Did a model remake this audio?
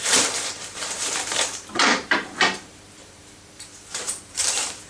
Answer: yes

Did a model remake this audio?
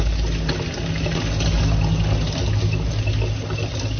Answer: no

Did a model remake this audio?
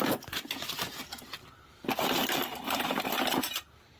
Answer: no